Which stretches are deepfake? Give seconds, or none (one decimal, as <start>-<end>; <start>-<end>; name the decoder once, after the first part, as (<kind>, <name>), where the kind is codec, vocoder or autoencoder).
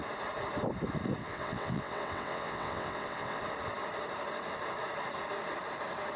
1.2-3.4 (vocoder, WaveNeXt)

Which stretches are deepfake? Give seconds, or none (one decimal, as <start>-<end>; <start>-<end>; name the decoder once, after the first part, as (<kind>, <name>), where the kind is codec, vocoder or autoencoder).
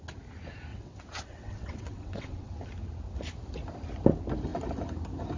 0.7-2.6 (vocoder, WaveNeXt)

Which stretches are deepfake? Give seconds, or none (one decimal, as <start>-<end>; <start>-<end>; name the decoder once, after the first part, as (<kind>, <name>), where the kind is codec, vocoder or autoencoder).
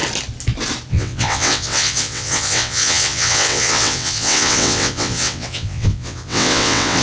0.9-7.0 (vocoder, WaveNeXt)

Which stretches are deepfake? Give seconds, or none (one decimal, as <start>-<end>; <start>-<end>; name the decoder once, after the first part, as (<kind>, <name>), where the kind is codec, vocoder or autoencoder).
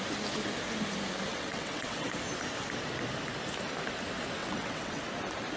1.3-2.1 (vocoder, WaveNeXt); 4.4-5.0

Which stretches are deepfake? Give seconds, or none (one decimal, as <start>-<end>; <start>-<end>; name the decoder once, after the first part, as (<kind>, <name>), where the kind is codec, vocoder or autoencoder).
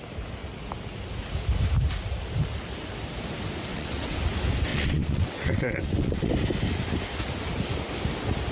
3.7-4.2 (vocoder, WaveNeXt); 4.7-6.3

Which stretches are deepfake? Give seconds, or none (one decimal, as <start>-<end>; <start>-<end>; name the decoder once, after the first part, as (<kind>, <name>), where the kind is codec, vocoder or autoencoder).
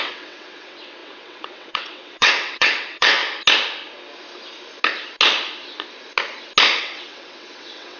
0.0-3.2 (vocoder, WaveNeXt); 6.8-8.0